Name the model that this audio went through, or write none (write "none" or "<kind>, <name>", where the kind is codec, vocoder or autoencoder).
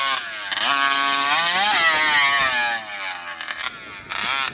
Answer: none